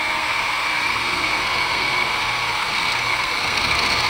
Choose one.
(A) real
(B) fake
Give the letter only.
B